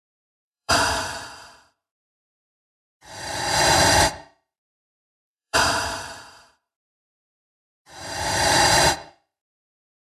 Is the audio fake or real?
fake